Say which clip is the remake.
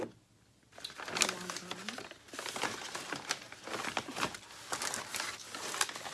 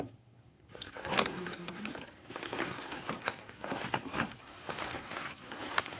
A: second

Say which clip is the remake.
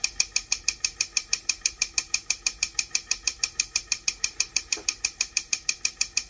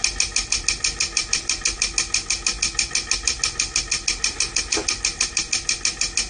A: first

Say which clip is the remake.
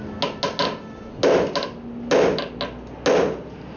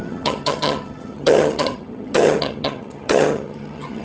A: second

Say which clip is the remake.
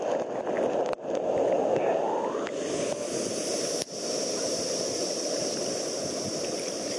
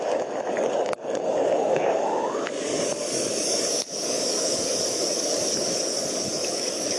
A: second